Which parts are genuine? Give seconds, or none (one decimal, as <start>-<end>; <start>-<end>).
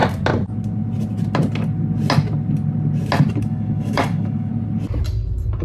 0.0-3.4; 4.5-5.6